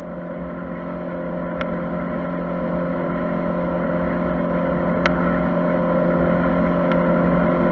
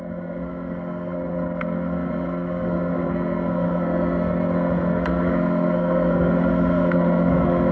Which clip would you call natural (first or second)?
first